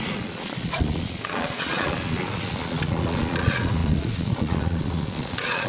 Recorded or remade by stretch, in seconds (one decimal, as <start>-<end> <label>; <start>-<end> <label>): 0.0-5.7 remade